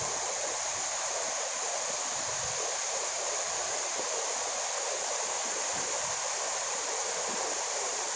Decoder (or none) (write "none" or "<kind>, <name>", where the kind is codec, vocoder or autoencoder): vocoder, BigVGAN v2